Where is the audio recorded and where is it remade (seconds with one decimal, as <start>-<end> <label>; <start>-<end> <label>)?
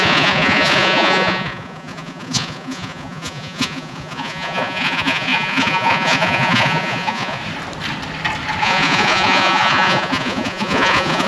0.0-7.4 remade; 7.4-8.6 recorded; 8.6-11.3 remade